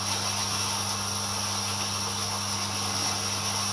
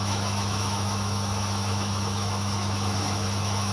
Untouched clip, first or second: first